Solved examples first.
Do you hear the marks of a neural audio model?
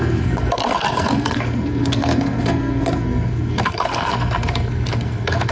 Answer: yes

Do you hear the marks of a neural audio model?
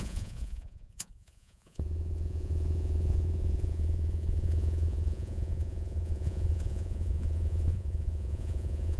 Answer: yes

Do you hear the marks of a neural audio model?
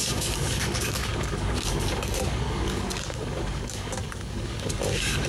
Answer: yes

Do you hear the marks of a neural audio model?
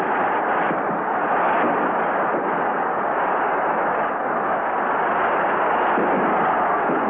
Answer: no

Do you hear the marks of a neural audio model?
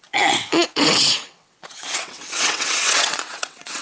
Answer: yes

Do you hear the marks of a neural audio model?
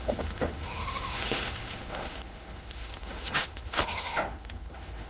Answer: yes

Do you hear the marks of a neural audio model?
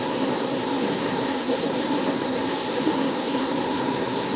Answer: yes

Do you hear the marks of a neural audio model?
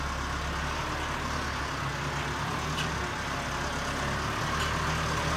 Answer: no